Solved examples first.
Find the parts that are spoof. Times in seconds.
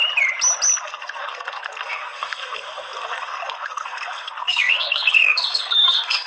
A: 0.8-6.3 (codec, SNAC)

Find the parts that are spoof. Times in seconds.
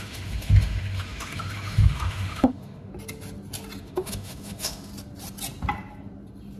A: 0.0-2.9 (autoencoder, DAC-VAE); 3.8-4.9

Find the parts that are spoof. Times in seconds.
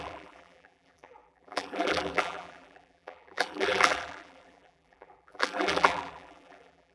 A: 0.0-6.9 (vocoder, BigVGAN v2)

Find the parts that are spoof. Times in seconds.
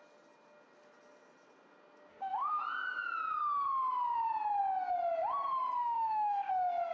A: 2.1-2.6 (autoencoder, DAC-VAE); 5.8-6.5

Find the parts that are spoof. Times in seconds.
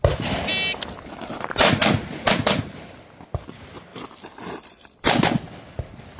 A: none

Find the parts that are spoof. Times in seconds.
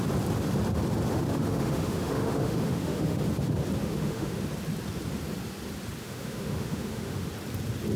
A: 1.1-3.2 (autoencoder, DAC-VAE); 3.8-4.4; 6.0-7.3